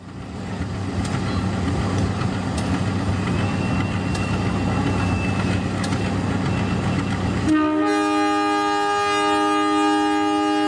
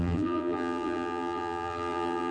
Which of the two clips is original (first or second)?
first